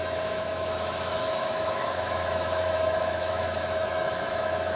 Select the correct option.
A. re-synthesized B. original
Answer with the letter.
A